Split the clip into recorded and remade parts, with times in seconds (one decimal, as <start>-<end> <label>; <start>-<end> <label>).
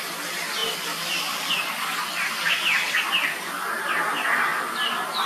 0.0-0.6 recorded; 0.6-3.5 remade; 3.5-5.3 recorded